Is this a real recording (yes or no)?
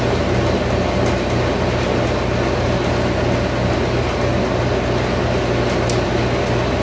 yes